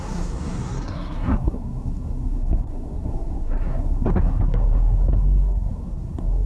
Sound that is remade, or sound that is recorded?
remade